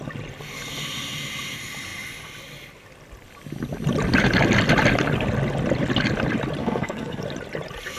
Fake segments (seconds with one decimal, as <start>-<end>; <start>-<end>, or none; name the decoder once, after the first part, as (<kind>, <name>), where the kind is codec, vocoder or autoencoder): 6.6-7.2 (codec, SNAC)